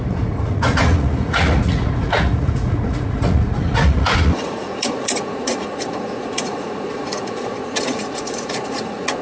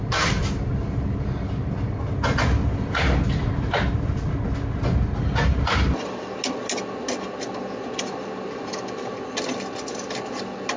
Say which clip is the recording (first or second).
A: second